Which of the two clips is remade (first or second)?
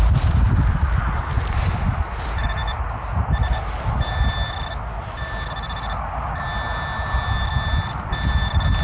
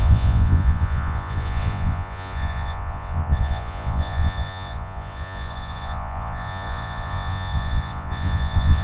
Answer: second